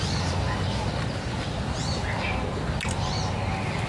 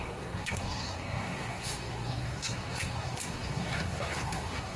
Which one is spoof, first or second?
second